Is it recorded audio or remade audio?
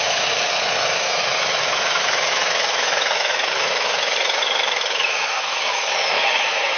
remade